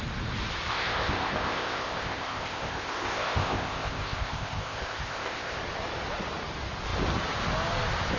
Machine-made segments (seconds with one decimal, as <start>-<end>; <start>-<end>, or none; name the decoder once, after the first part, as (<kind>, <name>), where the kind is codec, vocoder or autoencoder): 0.7-5.6 (codec, ZipCodec)